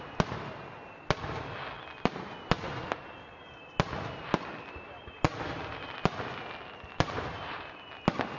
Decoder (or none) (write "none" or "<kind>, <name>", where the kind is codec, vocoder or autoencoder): none